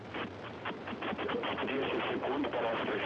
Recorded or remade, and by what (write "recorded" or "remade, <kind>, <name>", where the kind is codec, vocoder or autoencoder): remade, vocoder, BigVGAN v2